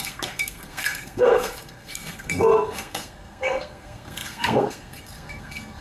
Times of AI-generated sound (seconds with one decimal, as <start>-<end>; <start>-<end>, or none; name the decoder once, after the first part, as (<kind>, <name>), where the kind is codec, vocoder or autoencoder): 0.0-5.8 (codec, SNAC)

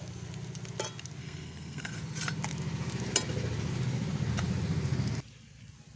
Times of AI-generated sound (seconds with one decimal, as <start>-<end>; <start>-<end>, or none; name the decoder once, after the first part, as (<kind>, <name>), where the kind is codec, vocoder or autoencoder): 1.2-2.0 (codec, SNAC)

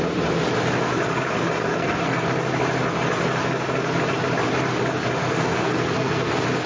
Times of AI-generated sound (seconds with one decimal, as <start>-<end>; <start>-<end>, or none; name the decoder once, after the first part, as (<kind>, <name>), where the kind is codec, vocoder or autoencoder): 1.7-2.3 (codec, SNAC); 5.2-6.3